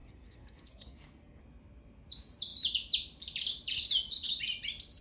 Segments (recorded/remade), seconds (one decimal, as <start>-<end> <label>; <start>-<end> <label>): 0.0-1.4 remade; 1.4-5.0 recorded